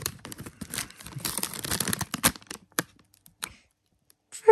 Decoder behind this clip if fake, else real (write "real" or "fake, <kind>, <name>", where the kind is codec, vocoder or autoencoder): fake, vocoder, BigVGAN v2